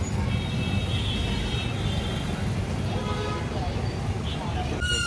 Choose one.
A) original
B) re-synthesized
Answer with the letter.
A